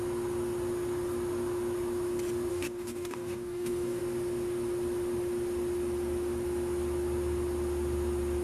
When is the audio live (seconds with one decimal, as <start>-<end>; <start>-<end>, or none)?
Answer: 0.0-2.5; 4.0-8.4